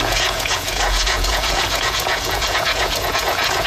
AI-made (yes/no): yes